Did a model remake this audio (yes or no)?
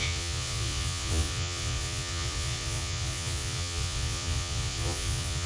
yes